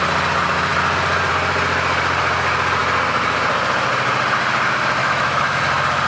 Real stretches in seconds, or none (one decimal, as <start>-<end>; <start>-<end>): 0.0-5.0; 5.6-6.1